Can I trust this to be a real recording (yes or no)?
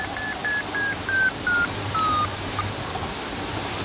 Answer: yes